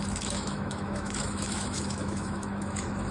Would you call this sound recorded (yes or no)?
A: no